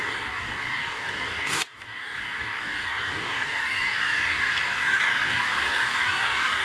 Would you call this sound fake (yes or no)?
yes